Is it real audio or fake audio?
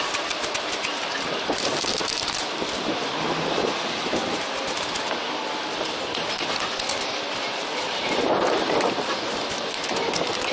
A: real